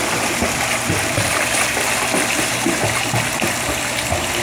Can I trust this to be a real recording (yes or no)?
yes